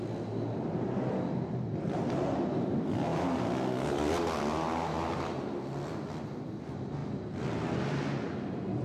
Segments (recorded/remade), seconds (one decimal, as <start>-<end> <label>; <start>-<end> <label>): 0.0-8.8 recorded